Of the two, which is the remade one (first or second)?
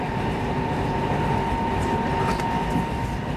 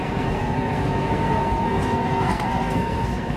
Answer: second